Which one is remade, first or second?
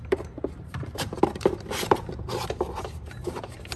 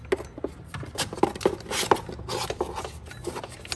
first